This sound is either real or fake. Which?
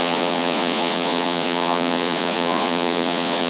fake